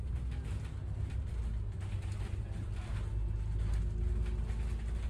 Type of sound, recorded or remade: recorded